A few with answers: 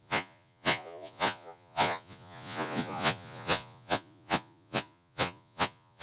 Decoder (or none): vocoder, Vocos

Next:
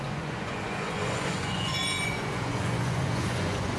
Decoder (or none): vocoder, Vocos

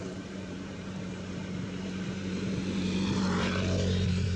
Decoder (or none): vocoder, BigVGAN v2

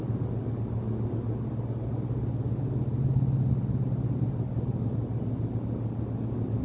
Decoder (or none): none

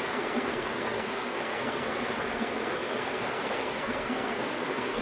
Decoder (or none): codec, SNAC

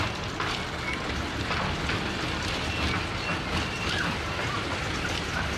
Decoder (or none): none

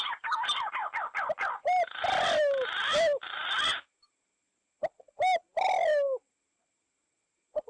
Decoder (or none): none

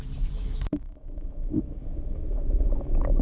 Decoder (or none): autoencoder, DAC-VAE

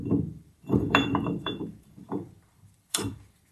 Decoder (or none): vocoder, BigVGAN v2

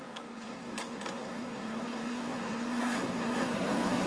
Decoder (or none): codec, SNAC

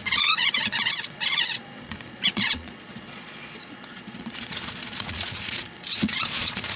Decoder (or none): vocoder, Vocos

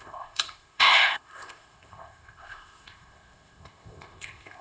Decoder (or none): codec, ZipCodec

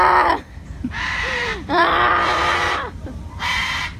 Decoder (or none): vocoder, BigVGAN v2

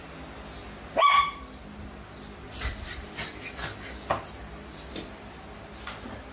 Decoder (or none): none